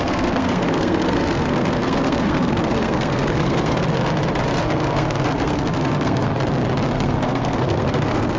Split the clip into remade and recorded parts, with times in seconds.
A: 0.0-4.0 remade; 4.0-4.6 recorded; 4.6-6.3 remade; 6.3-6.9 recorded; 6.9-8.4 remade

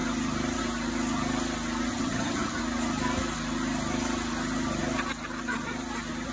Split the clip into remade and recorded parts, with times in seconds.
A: 0.0-1.9 recorded; 1.9-2.6 remade; 2.6-6.3 recorded

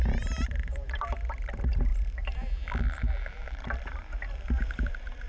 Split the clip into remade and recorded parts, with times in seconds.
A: 0.0-1.9 remade; 1.9-2.8 recorded; 2.8-5.3 remade

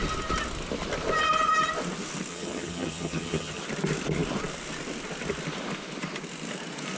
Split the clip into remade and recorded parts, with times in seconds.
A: 0.0-2.3 recorded; 2.3-3.6 remade; 3.6-7.0 recorded

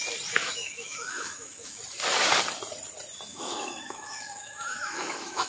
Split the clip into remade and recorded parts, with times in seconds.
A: 0.0-0.4 recorded; 0.4-1.8 remade; 1.8-3.3 recorded; 3.3-5.5 remade

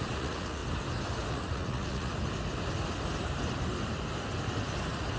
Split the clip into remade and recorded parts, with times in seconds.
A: 0.0-0.6 remade; 0.6-1.3 recorded; 1.3-2.1 remade; 2.1-5.2 recorded

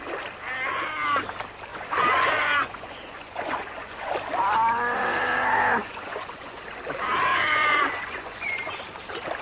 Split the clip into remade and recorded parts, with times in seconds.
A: 0.0-1.7 recorded; 1.7-4.1 remade; 4.1-5.8 recorded; 5.8-6.6 remade; 6.6-7.3 recorded; 7.3-8.7 remade; 8.7-9.4 recorded